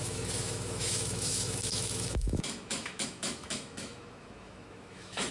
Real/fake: fake